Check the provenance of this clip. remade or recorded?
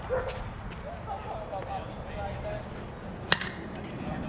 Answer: recorded